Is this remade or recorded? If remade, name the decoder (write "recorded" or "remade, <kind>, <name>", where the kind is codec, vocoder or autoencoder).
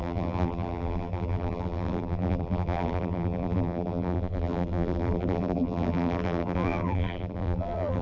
remade, vocoder, BigVGAN v2